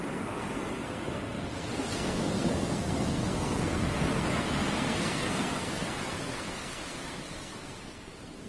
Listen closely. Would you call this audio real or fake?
fake